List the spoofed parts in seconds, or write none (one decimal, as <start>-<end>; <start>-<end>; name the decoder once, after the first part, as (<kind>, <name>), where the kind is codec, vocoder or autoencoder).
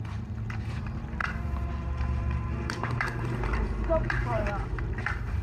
0.0-5.4 (vocoder, BigVGAN v2)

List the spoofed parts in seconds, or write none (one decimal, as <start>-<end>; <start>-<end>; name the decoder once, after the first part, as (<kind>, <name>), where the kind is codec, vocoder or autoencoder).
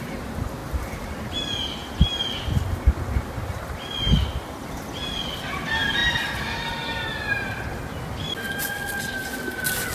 none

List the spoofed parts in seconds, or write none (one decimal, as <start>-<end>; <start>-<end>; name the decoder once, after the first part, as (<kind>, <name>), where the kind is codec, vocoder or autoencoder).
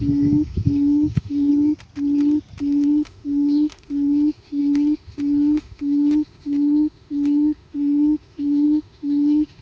0.0-1.5 (autoencoder, DAC-VAE); 2.6-9.6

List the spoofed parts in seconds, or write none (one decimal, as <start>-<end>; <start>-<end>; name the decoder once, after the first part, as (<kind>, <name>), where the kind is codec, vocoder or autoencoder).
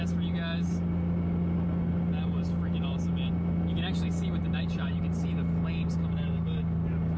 4.4-5.0 (vocoder, BigVGAN v2)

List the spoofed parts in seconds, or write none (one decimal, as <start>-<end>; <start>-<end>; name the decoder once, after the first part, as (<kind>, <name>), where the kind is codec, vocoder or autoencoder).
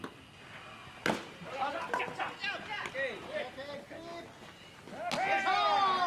none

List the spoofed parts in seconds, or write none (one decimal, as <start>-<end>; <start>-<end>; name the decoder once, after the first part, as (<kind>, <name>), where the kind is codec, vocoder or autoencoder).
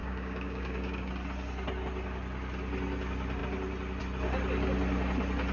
0.0-1.1 (codec, DAC)